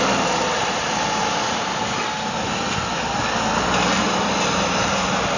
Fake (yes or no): no